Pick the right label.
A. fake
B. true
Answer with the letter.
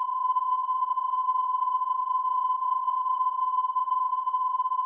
A